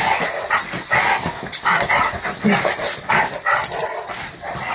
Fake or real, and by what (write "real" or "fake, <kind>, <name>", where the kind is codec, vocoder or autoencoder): real